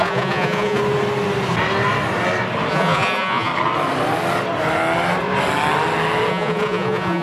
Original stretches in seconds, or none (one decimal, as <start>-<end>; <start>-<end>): 0.8-2.7; 3.5-6.3